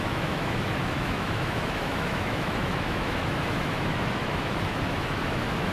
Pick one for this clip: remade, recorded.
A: remade